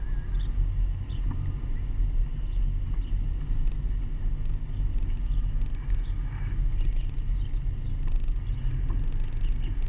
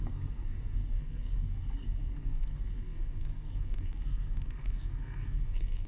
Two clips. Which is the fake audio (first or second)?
second